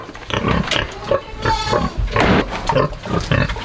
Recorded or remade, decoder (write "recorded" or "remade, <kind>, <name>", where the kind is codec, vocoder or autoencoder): recorded